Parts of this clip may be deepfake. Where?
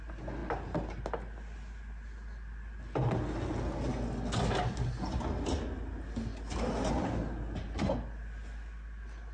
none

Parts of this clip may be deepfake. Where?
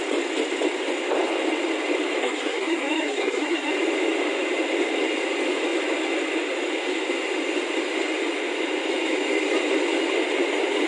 2.2-3.7 (codec, SNAC)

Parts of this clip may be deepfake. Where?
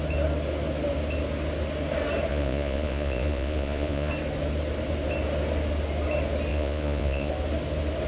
2.3-4.1 (vocoder, Vocos); 6.5-7.3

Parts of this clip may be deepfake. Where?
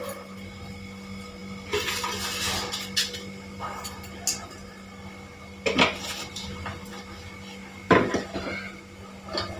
none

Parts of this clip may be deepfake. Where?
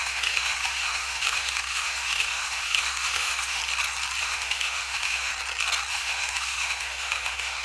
0.0-3.6 (autoencoder, DAC-VAE); 4.2-5.3; 5.9-7.6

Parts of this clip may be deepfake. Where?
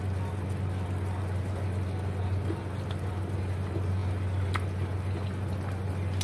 none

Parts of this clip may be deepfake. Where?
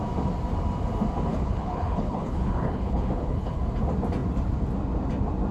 1.3-3.6 (codec, HILCodec)